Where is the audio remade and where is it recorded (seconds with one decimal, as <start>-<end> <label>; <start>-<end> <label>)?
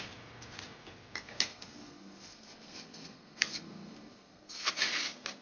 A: 0.0-1.5 recorded; 1.5-4.7 remade; 4.7-5.4 recorded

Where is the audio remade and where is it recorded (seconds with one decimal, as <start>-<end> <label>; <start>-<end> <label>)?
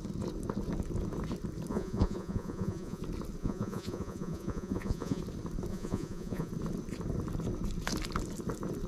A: 0.0-1.7 recorded; 1.7-3.0 remade; 3.0-3.4 recorded; 3.4-5.2 remade; 5.2-5.7 recorded; 5.7-6.5 remade; 6.5-8.9 recorded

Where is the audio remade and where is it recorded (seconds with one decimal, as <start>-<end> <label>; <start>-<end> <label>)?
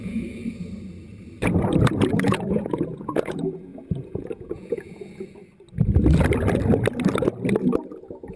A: 0.0-0.4 remade; 0.4-2.1 recorded; 2.1-5.4 remade; 5.4-7.6 recorded; 7.6-8.4 remade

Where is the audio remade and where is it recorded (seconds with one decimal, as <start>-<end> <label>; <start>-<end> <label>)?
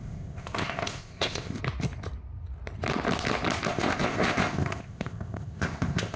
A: 0.0-1.6 remade; 1.6-3.7 recorded; 3.7-6.2 remade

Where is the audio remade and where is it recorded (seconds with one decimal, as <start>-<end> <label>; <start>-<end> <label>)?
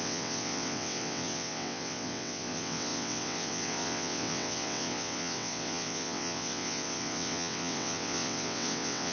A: 0.0-9.1 remade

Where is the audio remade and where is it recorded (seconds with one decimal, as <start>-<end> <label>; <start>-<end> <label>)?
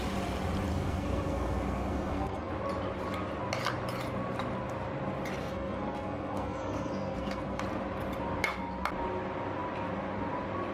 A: 0.0-0.7 recorded; 0.7-2.5 remade; 2.5-5.4 recorded; 5.4-7.6 remade; 7.6-10.7 recorded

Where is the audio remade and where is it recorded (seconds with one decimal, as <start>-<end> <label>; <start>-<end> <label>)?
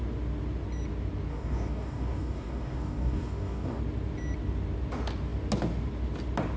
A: 0.0-1.3 recorded; 1.3-3.8 remade; 3.8-6.6 recorded